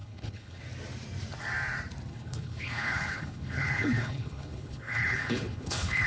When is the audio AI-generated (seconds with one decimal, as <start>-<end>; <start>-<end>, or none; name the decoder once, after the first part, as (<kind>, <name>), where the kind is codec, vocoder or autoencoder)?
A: 0.0-0.6 (codec, HILCodec); 2.1-6.1